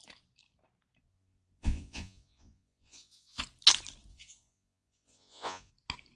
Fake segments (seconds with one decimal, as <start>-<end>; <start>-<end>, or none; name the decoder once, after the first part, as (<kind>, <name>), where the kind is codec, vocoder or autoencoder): 1.1-3.4 (vocoder, Vocos); 4.1-5.7